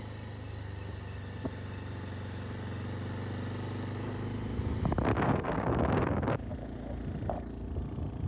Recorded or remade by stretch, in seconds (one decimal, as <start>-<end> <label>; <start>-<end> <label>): 0.0-5.1 recorded; 5.1-6.5 remade; 6.5-8.3 recorded

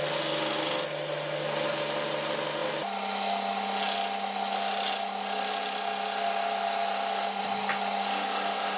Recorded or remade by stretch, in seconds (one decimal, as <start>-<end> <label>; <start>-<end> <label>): 0.0-8.8 recorded